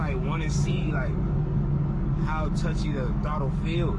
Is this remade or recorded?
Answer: remade